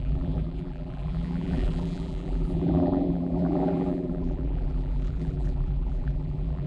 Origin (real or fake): fake